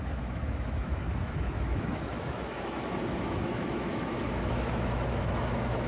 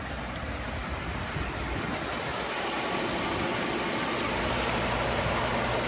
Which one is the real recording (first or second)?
second